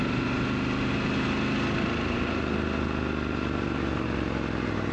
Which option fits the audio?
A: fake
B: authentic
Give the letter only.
B